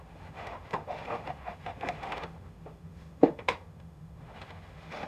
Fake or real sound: fake